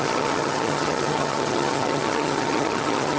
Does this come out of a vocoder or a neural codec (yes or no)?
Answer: yes